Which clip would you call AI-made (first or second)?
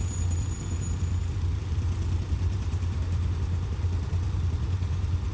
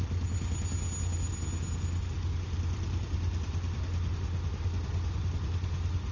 first